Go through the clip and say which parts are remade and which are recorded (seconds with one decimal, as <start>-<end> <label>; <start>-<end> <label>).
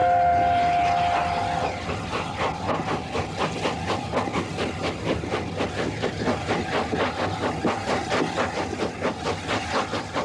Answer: 0.0-10.2 recorded